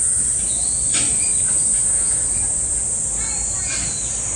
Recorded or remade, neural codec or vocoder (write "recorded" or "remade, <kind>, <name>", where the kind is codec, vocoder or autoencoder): recorded